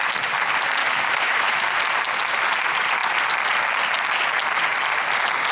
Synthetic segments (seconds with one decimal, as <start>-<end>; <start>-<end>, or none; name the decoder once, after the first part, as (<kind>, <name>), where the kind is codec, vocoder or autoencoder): 0.8-1.6 (autoencoder, DAC-VAE)